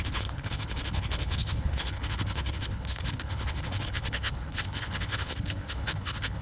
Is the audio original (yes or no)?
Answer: no